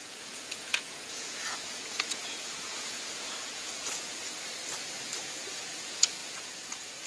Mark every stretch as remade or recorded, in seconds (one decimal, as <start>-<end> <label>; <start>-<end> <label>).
0.0-4.2 remade; 4.2-5.2 recorded; 5.2-7.1 remade